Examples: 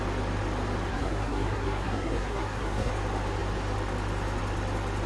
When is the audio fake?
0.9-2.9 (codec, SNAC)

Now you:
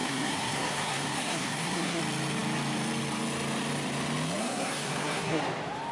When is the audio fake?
0.0-2.0 (codec, SNAC); 4.4-5.4

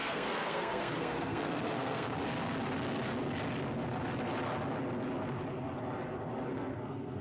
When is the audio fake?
0.0-2.2 (codec, SNAC); 6.5-7.2

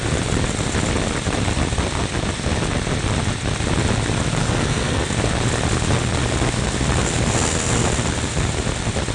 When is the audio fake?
4.4-5.0 (codec, SNAC)